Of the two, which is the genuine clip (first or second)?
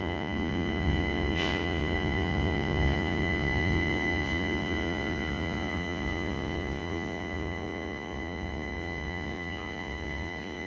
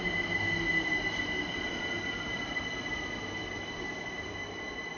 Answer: second